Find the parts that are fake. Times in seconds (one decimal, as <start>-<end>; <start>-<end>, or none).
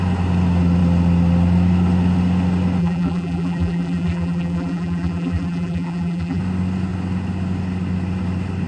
2.8-6.4